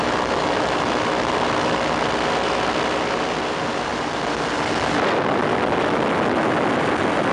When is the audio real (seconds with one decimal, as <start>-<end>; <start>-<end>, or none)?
0.0-7.3